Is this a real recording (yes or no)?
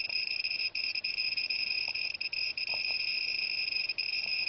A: no